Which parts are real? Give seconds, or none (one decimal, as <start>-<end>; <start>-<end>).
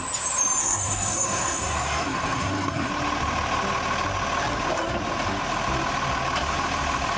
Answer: 0.0-0.6; 2.9-7.2